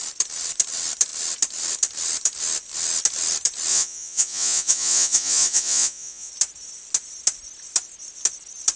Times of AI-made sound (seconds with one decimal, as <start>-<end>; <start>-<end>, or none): 3.7-6.3